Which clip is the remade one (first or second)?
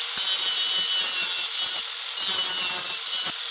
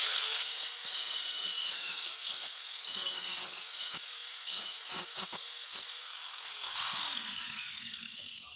second